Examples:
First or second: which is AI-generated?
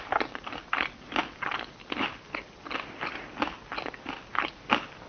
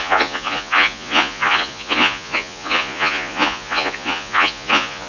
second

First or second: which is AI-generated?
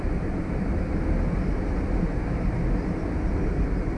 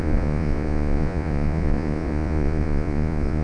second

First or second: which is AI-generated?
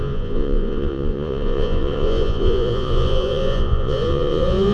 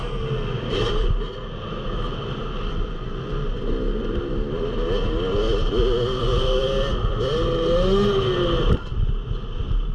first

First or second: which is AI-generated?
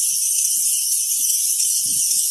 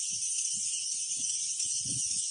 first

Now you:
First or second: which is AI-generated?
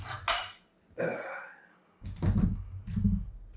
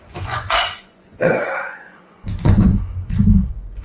second